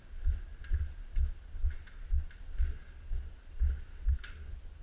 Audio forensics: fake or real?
real